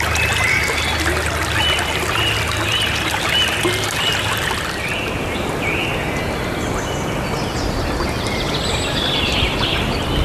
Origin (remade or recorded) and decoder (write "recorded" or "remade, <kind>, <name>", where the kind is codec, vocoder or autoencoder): recorded